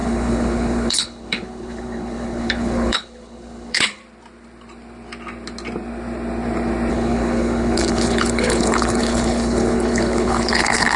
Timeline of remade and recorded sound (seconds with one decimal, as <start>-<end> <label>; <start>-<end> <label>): 0.0-4.0 remade; 4.0-6.9 recorded; 6.9-11.0 remade